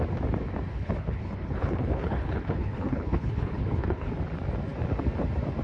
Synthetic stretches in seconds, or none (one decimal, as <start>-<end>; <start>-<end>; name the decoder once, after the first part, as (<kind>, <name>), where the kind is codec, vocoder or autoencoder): 0.7-4.1 (codec, HILCodec)